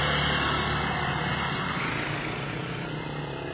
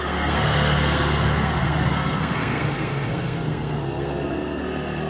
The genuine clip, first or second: first